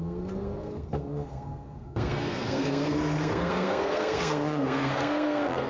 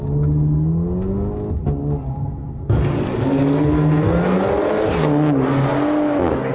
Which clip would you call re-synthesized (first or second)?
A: first